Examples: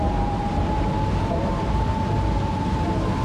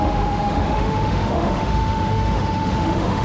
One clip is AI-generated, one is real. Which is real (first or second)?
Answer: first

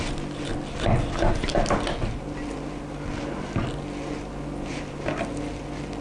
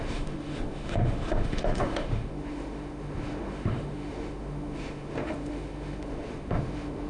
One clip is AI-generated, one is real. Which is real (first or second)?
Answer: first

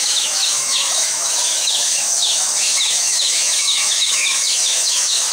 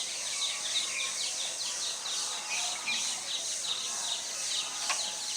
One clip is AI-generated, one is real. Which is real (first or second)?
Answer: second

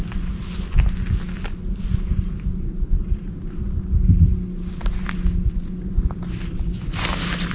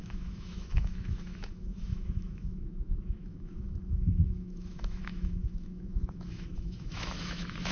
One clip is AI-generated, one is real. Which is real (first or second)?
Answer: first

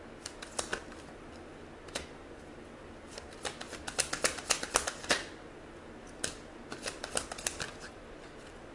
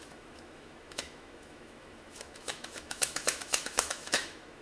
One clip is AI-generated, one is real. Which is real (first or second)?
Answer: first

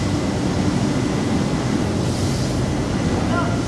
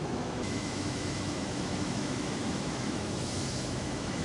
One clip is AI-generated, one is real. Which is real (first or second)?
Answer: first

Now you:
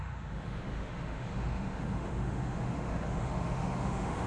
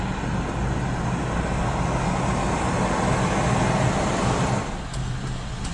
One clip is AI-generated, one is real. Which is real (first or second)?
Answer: second